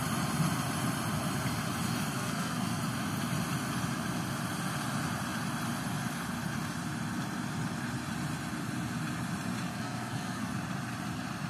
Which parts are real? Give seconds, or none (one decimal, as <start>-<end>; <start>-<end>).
0.0-2.1; 2.8-9.7; 10.5-11.5